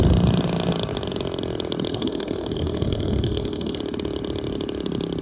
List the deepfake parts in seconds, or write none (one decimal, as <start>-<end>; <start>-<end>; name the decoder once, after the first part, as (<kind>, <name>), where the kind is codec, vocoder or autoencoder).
1.9-3.8 (codec, SNAC)